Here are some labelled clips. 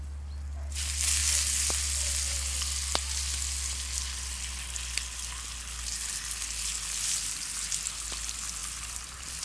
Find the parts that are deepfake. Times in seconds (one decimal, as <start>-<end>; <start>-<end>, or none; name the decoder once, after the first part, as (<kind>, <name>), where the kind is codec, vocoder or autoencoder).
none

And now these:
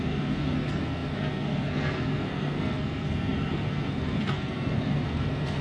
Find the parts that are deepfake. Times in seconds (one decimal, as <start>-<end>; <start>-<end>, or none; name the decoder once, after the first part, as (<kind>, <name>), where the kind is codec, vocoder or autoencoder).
0.0-5.6 (codec, SNAC)

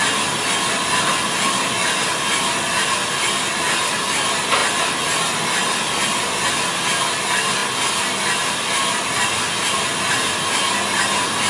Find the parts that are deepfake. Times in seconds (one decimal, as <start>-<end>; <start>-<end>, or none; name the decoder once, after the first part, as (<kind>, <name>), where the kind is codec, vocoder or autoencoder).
none

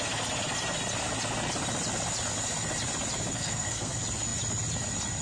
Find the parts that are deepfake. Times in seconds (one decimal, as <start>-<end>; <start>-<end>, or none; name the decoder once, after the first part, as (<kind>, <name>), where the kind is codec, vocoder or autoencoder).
3.3-3.9 (codec, SNAC)

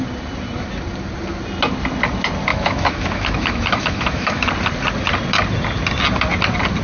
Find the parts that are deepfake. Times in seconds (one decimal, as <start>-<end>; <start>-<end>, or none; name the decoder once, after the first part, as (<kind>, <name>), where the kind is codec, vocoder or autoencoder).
2.5-4.5 (autoencoder, DAC-VAE)

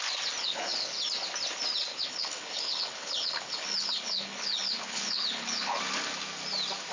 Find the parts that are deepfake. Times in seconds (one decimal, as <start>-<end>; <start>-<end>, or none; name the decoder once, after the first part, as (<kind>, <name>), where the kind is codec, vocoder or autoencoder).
0.4-1.0 (codec, HILCodec); 1.9-5.8